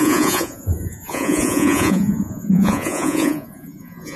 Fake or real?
fake